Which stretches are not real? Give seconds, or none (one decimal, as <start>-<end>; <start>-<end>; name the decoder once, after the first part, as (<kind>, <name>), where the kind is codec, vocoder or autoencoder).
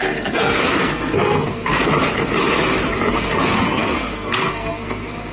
0.0-1.9 (codec, SNAC); 3.1-5.3